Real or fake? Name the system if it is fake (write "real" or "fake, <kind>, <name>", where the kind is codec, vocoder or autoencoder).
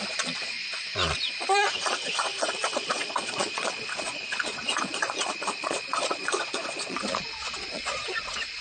fake, vocoder, Vocos